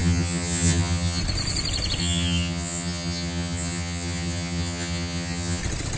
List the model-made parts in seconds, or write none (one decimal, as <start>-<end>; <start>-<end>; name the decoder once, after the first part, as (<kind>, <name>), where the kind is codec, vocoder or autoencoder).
0.0-1.2 (vocoder, HiFi-GAN); 2.0-5.6